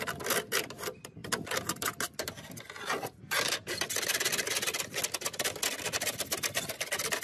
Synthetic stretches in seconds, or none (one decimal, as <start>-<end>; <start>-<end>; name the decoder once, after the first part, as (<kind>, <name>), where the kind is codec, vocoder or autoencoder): none